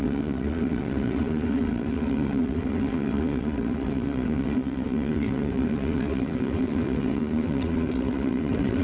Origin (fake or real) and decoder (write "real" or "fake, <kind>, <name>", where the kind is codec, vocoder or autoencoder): fake, vocoder, WaveNeXt